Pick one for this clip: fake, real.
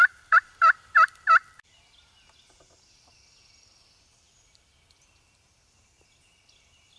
fake